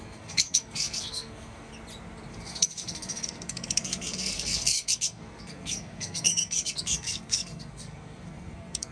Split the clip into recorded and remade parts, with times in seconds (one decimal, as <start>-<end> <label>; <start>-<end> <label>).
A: 0.0-1.7 remade; 1.7-2.3 recorded; 2.3-8.9 remade